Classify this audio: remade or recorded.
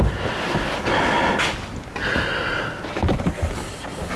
recorded